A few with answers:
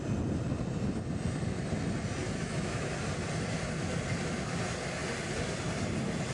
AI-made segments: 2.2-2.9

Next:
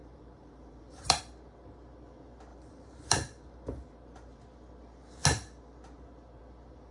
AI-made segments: 0.0-1.2; 2.5-4.4

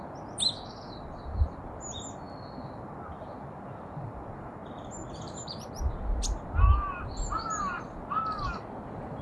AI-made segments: none

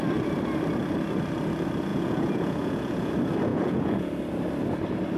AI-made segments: 1.9-3.1; 3.5-4.1

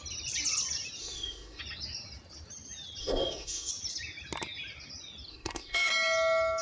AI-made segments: 1.0-1.6; 3.0-3.7; 5.3-5.9